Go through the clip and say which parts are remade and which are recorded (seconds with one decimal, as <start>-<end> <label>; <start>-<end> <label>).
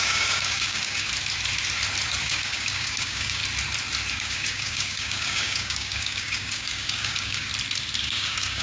0.0-1.1 remade; 1.1-2.2 recorded; 2.2-3.4 remade; 3.4-4.1 recorded; 4.1-7.5 remade; 7.5-8.0 recorded; 8.0-8.6 remade